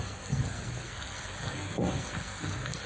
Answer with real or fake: fake